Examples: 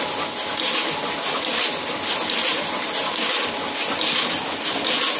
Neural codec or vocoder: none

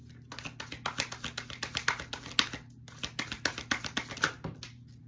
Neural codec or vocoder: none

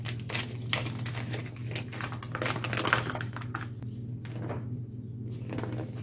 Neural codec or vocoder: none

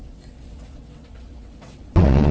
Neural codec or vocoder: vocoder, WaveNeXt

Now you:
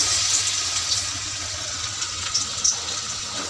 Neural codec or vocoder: vocoder, WaveNeXt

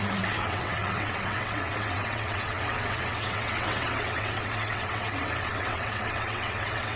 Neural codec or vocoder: vocoder, WaveNeXt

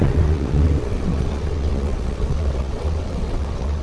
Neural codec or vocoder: vocoder, WaveNeXt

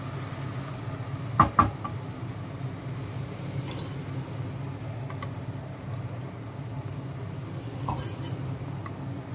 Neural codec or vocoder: none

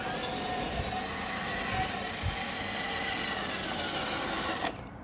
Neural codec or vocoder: none